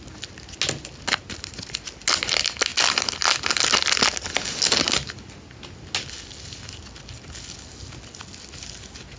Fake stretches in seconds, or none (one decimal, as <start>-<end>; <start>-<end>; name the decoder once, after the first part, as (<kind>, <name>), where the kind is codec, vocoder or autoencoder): none